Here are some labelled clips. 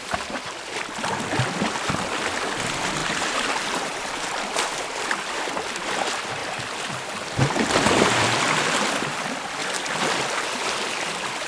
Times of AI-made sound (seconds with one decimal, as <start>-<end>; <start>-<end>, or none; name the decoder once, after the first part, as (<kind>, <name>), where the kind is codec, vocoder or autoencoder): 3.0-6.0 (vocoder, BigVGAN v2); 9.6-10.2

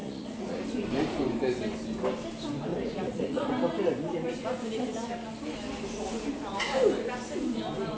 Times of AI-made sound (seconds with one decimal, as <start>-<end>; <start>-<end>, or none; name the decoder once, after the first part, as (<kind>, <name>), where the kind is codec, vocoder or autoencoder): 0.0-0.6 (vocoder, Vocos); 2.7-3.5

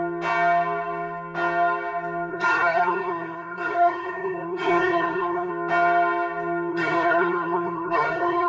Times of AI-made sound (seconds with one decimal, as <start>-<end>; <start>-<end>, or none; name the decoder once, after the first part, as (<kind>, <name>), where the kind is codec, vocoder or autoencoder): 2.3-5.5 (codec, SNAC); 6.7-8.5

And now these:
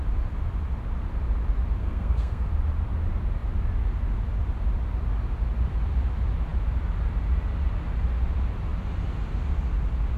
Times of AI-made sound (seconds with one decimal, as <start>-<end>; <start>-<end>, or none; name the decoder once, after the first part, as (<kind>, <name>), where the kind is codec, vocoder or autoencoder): 1.8-2.5 (codec, SNAC)

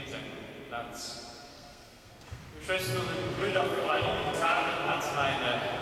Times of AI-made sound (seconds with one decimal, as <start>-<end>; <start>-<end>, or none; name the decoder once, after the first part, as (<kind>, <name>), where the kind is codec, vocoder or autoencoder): 1.5-2.4 (codec, SNAC); 3.3-5.0

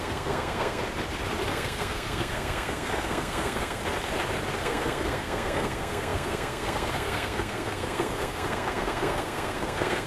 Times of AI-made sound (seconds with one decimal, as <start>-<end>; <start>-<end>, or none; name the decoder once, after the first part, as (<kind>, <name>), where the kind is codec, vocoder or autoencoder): 0.0-0.8 (codec, SNAC); 1.5-3.8; 4.6-10.1